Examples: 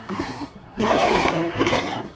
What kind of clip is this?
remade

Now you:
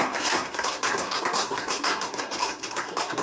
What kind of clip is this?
remade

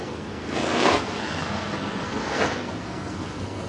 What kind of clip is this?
remade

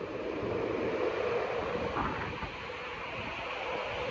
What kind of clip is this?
recorded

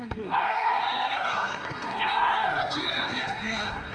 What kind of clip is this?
remade